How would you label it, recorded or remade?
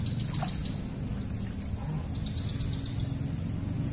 recorded